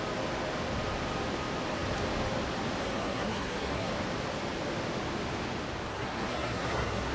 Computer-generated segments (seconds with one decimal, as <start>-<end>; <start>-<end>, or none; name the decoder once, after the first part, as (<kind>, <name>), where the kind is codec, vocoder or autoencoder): 2.8-3.9 (codec, SNAC); 5.9-7.1